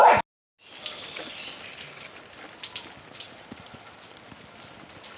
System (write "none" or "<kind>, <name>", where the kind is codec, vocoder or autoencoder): none